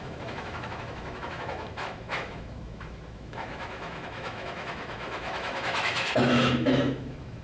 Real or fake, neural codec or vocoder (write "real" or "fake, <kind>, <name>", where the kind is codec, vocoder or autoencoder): fake, autoencoder, DAC-VAE